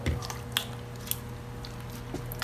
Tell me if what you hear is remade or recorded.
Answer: recorded